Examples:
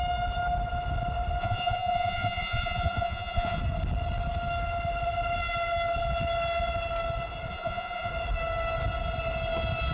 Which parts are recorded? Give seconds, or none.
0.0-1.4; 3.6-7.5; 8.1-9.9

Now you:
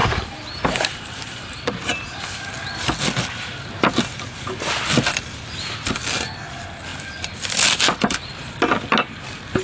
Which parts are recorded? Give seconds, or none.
2.5-9.6

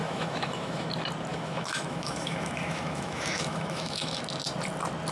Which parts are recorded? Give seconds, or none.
0.9-1.3; 4.2-5.1

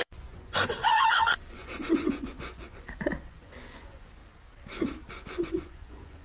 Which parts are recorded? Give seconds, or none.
4.2-5.1